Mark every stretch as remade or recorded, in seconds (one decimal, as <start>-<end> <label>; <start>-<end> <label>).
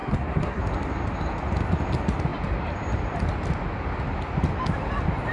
0.0-0.6 remade; 0.6-5.3 recorded